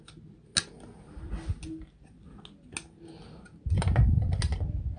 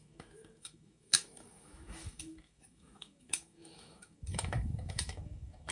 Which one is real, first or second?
first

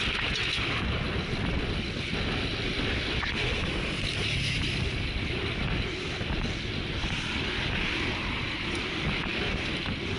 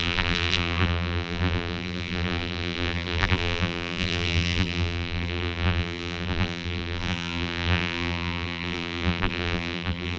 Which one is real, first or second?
first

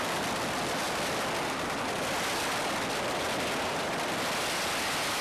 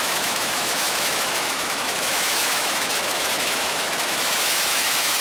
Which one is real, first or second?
first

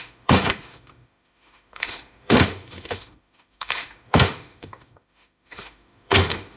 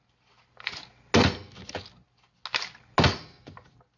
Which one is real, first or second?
second